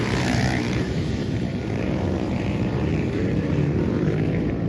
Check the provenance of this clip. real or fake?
fake